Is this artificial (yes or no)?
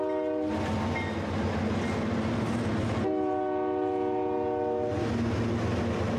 no